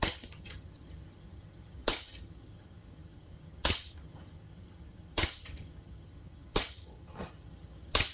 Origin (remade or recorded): remade